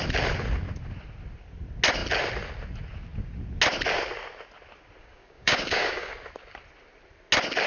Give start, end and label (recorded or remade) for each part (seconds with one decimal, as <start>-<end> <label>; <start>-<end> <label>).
0.0-5.0 recorded; 5.0-6.1 remade; 6.1-7.7 recorded